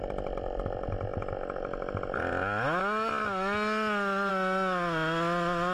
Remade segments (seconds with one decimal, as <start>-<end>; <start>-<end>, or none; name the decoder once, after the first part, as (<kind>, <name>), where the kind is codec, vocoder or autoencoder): none